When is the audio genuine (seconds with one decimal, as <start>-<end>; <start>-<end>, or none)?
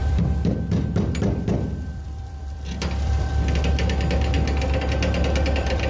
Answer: 3.3-5.5